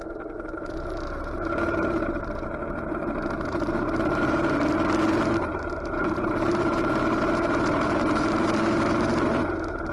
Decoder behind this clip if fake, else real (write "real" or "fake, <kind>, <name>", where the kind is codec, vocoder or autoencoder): fake, vocoder, BigVGAN v2